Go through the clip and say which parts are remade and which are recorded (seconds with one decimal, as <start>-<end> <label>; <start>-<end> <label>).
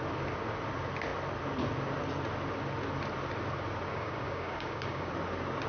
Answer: 0.0-3.9 recorded; 3.9-5.1 remade; 5.1-5.7 recorded